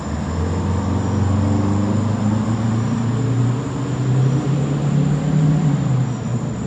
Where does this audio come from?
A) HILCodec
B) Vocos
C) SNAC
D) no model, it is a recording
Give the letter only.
D